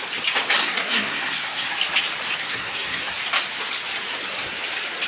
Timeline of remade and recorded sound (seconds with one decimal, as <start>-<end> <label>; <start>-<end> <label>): 0.0-0.6 recorded; 0.6-1.7 remade; 1.7-2.4 recorded; 2.4-3.2 remade; 3.2-5.1 recorded